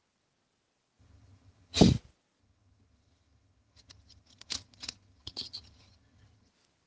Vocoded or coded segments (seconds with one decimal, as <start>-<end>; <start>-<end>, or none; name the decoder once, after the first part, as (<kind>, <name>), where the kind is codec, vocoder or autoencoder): 1.0-1.8 (vocoder, HiFi-GAN); 2.4-6.5